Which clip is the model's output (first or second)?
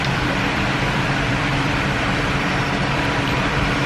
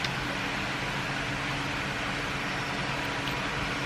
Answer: first